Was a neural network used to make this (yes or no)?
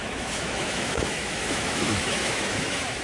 yes